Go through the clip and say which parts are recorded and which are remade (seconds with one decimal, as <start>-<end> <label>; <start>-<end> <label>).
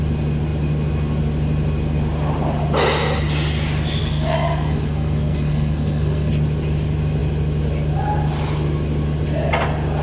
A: 0.0-4.0 recorded; 4.0-6.3 remade; 6.3-10.0 recorded